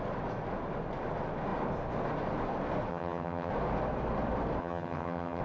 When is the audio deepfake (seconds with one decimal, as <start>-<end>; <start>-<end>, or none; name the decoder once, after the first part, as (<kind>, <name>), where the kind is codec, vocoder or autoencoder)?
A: 2.9-3.5 (vocoder, HiFi-GAN); 4.6-5.4